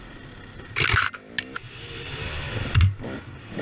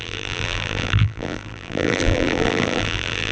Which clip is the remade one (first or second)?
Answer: second